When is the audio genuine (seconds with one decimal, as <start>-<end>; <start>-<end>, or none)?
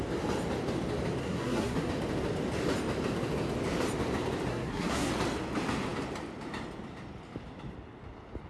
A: 0.0-1.2; 1.9-4.5; 5.1-8.5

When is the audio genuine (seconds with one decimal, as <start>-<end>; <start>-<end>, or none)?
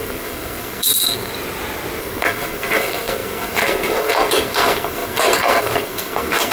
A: 1.3-2.0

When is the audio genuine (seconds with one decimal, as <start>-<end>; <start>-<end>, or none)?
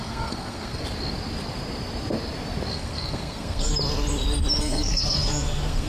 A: 0.8-2.7; 3.7-4.6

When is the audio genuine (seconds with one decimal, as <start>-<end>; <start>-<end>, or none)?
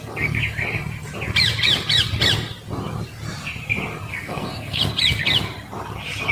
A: 0.0-4.1; 4.8-6.3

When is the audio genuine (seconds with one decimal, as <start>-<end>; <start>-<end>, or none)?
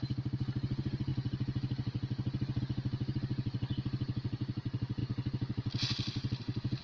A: 0.0-6.8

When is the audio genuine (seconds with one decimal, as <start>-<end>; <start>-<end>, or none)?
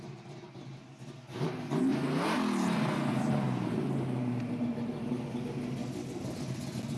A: 0.0-7.0